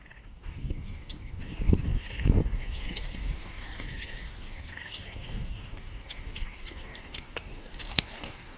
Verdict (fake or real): fake